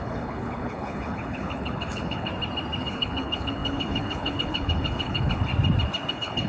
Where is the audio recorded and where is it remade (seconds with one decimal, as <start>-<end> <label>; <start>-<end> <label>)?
0.0-2.3 remade; 2.3-2.8 recorded; 2.8-5.5 remade; 5.5-6.1 recorded; 6.1-6.5 remade